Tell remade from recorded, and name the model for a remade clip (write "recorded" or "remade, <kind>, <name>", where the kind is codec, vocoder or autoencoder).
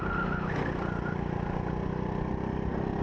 recorded